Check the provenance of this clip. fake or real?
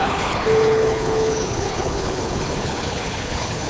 fake